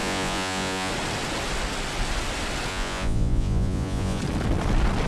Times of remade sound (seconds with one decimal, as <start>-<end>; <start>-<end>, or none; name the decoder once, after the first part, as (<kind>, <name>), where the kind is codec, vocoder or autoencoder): 0.0-0.9 (vocoder, Vocos); 2.7-4.2